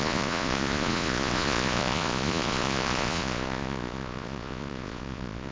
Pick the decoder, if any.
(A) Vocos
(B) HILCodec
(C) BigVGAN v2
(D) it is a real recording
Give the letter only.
A